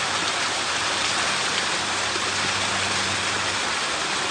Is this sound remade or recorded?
recorded